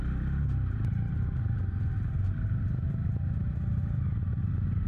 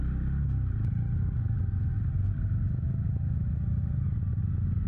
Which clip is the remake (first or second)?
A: first